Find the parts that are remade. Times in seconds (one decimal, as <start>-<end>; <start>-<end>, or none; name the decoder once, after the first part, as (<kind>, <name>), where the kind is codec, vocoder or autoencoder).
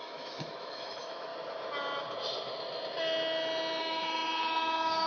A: 0.0-1.3 (autoencoder, DAC-VAE); 3.8-5.1